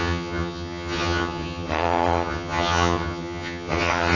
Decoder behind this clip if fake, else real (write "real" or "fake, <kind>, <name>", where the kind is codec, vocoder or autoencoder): fake, vocoder, HiFi-GAN